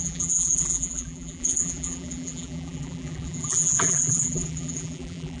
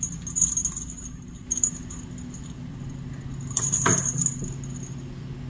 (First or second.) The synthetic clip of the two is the first